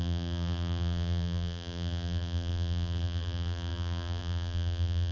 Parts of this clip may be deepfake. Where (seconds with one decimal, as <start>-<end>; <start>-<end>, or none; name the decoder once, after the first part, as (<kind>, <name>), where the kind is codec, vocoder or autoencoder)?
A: 0.0-5.1 (vocoder, BigVGAN v2)